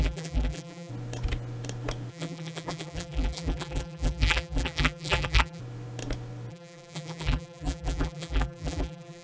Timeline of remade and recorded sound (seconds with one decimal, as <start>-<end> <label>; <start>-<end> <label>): 0.0-0.9 remade; 0.9-2.1 recorded; 2.1-5.6 remade; 5.6-6.5 recorded; 6.5-9.2 remade